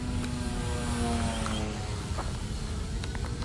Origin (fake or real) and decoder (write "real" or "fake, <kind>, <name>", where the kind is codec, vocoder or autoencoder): real